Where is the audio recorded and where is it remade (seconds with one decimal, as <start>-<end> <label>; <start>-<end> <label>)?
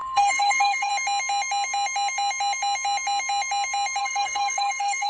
0.0-0.9 remade; 0.9-4.0 recorded; 4.0-5.1 remade